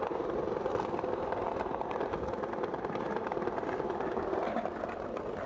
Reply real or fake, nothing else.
real